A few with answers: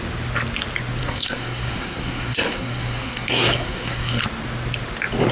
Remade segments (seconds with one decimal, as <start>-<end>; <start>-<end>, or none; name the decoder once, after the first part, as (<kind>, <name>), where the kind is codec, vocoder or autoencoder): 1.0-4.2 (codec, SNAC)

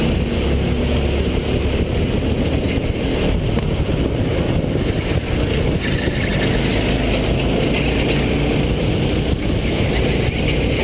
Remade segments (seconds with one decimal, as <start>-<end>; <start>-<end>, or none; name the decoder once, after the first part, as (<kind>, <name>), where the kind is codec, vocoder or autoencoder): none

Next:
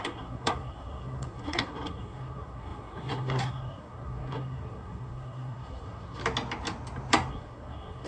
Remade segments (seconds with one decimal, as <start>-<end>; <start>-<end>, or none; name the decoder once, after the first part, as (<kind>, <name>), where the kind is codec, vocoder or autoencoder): 0.0-6.2 (codec, SNAC); 7.3-8.1

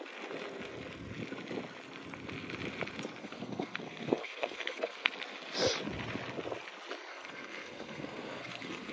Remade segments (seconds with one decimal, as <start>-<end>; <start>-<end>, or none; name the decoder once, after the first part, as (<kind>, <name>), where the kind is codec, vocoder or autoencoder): 3.2-5.1 (codec, SNAC); 7.1-8.9